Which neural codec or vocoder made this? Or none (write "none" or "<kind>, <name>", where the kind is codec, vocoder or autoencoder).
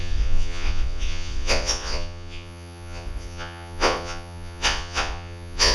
vocoder, Vocos